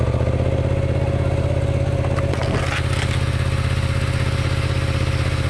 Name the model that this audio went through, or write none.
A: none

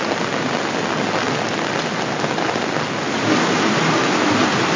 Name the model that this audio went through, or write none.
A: none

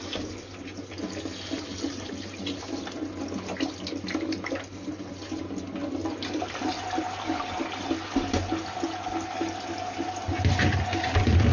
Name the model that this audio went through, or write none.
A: none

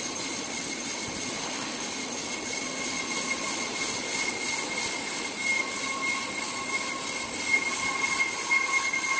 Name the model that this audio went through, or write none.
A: none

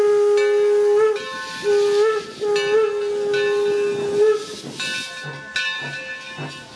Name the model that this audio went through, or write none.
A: none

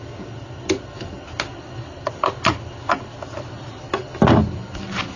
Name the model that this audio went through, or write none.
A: none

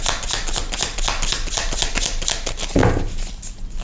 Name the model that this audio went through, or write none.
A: none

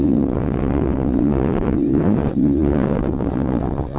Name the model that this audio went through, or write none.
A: vocoder, WaveNeXt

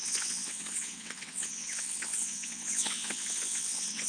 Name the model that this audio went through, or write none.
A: vocoder, WaveNeXt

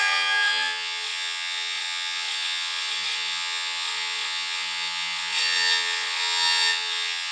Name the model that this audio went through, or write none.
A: vocoder, WaveNeXt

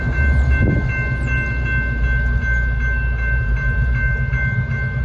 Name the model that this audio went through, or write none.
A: none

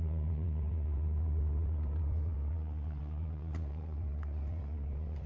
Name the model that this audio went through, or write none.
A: vocoder, WaveNeXt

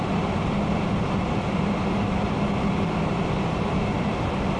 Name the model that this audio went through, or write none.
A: none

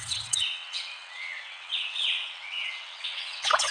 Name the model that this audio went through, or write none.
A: vocoder, WaveNeXt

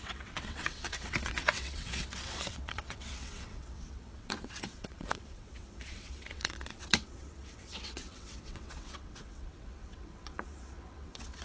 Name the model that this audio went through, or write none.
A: vocoder, WaveNeXt